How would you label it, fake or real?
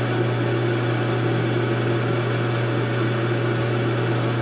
real